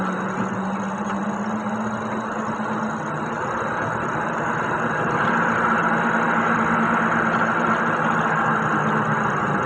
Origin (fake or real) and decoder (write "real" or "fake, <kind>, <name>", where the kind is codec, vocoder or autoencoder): real